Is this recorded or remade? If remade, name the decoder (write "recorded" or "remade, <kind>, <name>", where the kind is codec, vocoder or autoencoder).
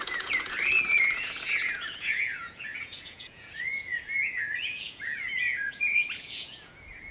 remade, vocoder, Vocos